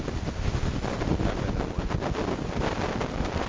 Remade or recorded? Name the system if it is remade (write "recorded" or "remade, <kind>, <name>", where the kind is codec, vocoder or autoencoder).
recorded